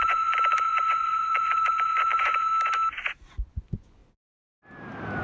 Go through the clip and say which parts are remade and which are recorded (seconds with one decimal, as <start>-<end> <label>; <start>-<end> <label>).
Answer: 0.0-2.5 remade; 2.5-3.5 recorded; 3.5-4.0 remade; 4.0-5.2 recorded